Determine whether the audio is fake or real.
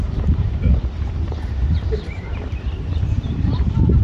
fake